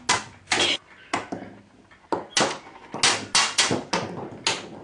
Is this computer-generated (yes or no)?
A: no